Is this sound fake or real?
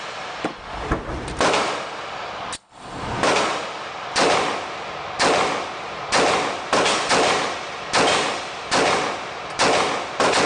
real